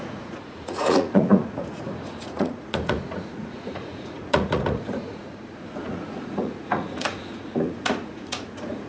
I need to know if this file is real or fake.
fake